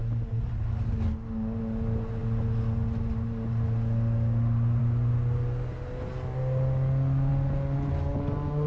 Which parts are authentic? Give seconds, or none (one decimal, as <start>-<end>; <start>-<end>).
0.0-8.7